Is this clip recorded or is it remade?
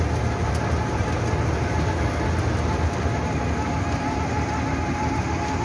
recorded